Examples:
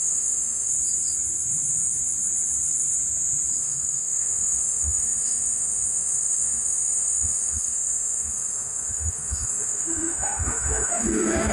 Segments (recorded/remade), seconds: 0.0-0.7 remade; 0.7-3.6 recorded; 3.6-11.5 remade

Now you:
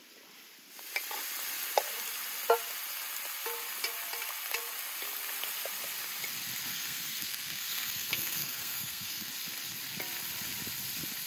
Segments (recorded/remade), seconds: 0.0-6.7 recorded; 6.7-9.3 remade; 9.3-11.3 recorded